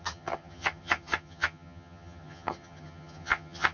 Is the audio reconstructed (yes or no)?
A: yes